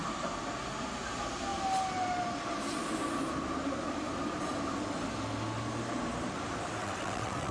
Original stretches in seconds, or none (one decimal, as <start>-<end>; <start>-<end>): 0.0-6.8